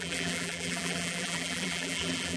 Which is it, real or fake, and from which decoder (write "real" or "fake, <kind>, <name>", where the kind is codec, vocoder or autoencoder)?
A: fake, vocoder, BigVGAN v2